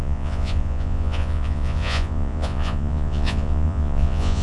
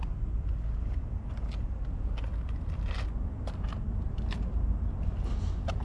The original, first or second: second